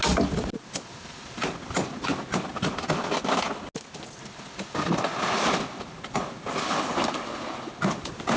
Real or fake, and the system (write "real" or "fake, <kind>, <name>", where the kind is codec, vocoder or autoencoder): real